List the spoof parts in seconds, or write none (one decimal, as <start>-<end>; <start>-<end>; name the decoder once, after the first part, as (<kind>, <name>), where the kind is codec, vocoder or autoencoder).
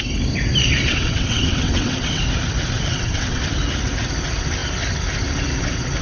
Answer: 0.8-2.2 (vocoder, WaveNeXt); 2.9-3.4